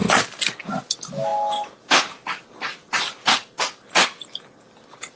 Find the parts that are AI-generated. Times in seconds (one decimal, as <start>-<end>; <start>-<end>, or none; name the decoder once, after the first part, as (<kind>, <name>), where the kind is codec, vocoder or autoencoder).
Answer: none